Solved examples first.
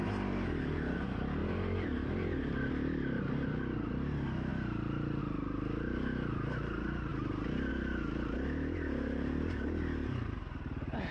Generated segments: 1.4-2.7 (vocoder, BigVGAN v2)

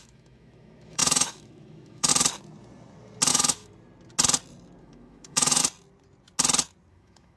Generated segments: 0.0-2.1 (autoencoder, DAC-VAE); 3.3-3.7; 4.8-5.6; 6.9-7.4

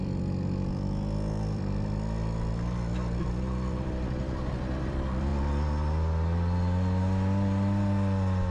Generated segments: 0.0-5.3 (vocoder, BigVGAN v2)

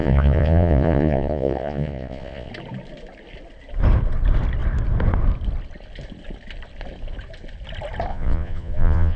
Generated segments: 0.0-2.5 (vocoder, Vocos); 8.1-9.2

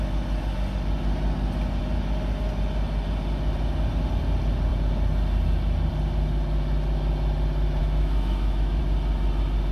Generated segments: 7.8-8.8 (autoencoder, DAC-VAE)

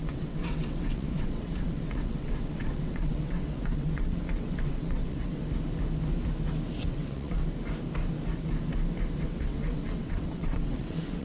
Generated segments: 0.0-5.4 (vocoder, WaveNeXt); 6.9-7.4; 9.2-11.2

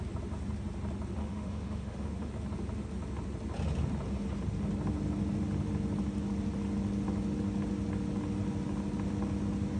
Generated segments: 1.2-2.3 (autoencoder, DAC-VAE)